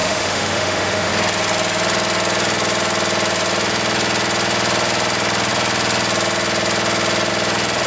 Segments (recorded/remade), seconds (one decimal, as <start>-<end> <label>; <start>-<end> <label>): 0.0-1.1 remade; 1.1-7.9 recorded